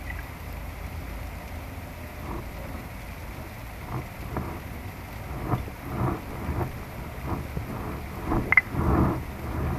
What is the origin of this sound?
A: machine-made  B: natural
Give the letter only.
B